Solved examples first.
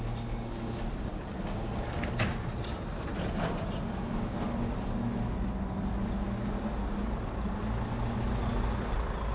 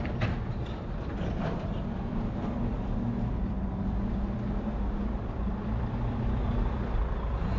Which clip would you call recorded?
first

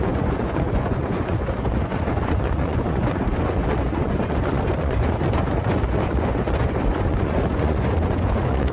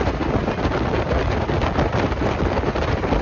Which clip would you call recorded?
second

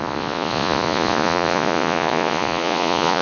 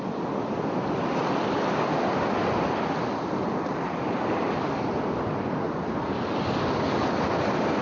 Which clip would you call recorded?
second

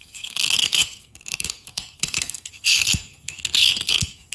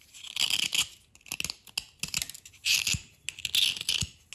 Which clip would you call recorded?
second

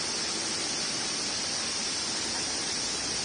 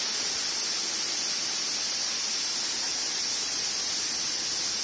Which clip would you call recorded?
second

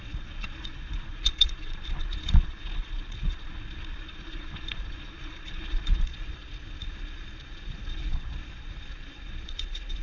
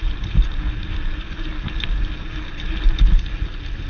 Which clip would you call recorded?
second